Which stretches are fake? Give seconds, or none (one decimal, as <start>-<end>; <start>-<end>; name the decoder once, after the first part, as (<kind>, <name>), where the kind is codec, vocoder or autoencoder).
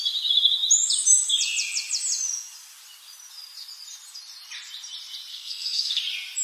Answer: 5.3-6.0 (codec, SNAC)